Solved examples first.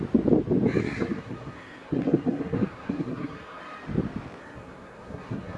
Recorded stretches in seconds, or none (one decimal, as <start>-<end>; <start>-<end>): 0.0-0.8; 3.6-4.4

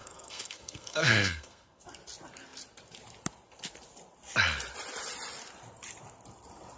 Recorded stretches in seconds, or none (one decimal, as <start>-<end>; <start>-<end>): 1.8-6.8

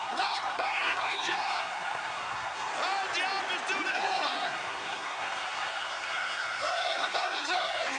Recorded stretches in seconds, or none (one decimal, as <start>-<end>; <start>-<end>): 2.7-3.9

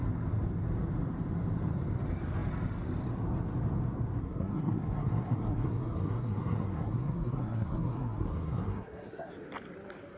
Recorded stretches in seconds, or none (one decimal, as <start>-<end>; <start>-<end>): 0.0-4.2; 9.3-10.2

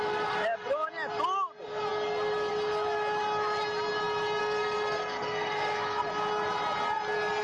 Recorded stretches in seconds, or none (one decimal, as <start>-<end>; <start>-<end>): 0.0-4.4; 6.1-7.4

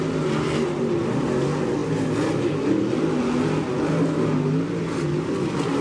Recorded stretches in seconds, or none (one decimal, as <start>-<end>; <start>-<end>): 0.0-5.8